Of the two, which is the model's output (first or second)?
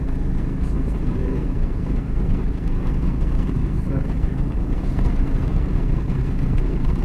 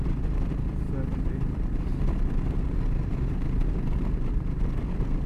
first